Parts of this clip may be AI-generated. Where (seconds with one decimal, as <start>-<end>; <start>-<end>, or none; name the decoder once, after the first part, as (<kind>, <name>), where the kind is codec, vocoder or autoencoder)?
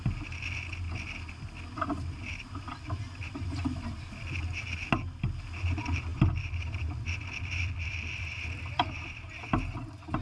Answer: 1.9-4.4 (vocoder, BigVGAN v2); 6.1-9.3